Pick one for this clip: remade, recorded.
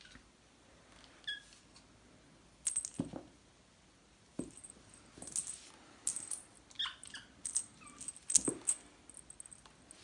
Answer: recorded